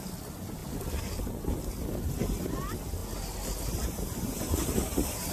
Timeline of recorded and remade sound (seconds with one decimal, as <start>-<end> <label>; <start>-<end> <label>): 0.0-5.3 recorded